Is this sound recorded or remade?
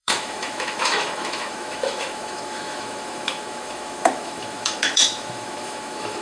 remade